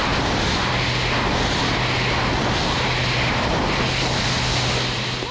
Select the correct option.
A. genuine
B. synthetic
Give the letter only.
A